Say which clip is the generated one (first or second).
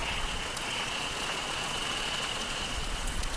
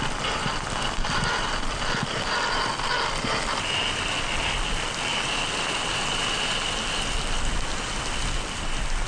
first